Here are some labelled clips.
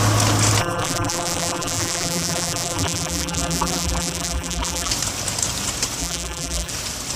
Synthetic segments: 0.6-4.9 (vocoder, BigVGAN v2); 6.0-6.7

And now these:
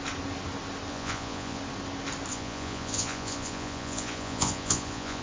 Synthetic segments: 0.9-1.6 (vocoder, Vocos); 2.3-5.2

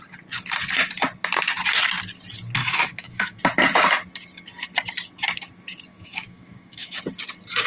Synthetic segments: 2.6-3.4 (autoencoder, DAC-VAE); 5.9-7.0